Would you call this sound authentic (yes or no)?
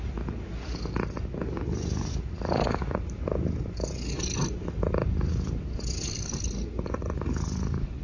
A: yes